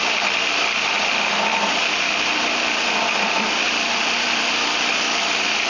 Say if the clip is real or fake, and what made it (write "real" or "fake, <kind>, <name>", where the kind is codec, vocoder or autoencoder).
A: fake, vocoder, BigVGAN v2